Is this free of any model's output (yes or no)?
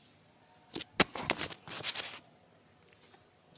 yes